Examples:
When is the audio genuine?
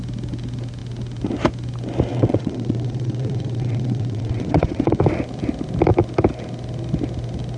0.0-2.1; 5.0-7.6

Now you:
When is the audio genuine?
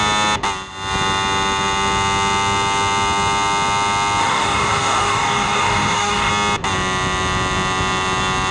0.0-4.2; 6.3-8.5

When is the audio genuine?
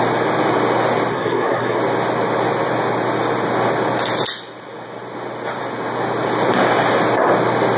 0.0-1.1; 1.8-7.8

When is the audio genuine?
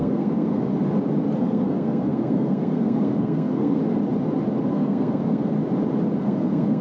0.7-1.4; 3.8-4.7; 5.5-6.2